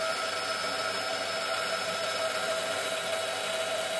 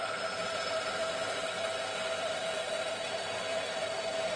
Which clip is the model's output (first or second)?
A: second